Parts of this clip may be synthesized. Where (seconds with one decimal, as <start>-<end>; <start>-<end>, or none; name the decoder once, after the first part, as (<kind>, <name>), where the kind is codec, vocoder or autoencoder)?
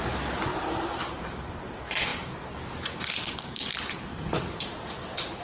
0.0-5.4 (vocoder, BigVGAN v2)